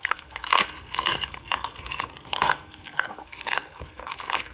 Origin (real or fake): fake